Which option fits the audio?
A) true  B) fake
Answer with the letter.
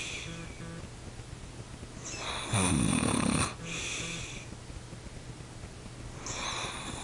A